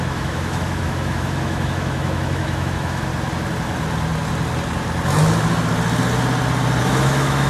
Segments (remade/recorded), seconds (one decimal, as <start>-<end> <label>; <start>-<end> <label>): 0.0-3.1 remade; 3.1-6.8 recorded; 6.8-7.5 remade